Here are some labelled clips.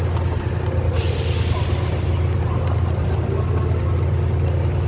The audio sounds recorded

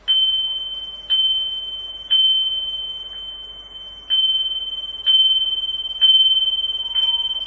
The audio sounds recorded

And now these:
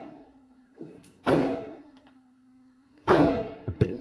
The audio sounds remade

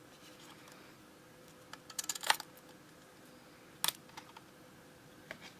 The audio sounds recorded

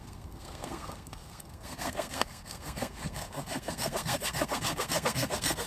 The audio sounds remade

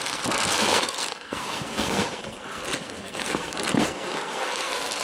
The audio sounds remade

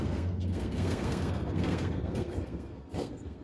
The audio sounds remade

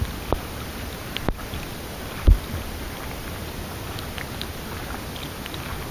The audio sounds recorded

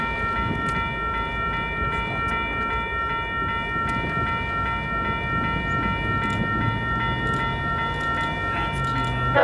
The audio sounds recorded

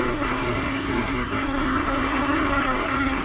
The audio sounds remade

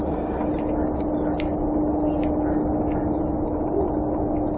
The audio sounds recorded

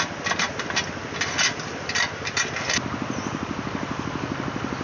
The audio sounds recorded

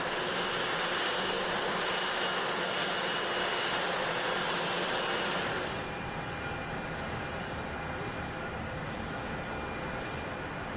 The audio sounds recorded